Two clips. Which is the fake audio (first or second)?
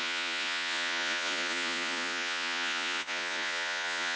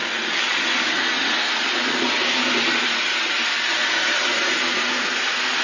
first